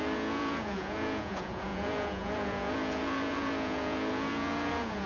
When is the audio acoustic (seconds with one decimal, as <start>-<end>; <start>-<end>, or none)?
none